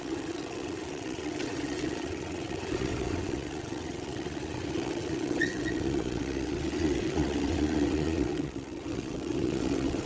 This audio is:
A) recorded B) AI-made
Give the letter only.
B